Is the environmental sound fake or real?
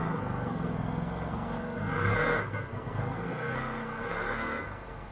fake